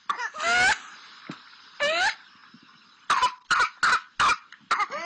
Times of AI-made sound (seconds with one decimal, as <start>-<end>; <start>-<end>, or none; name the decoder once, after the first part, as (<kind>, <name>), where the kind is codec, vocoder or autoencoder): none